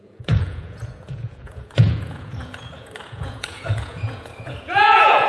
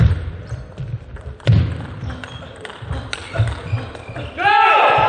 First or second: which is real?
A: second